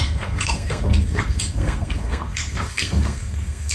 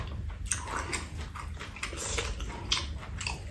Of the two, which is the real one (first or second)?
second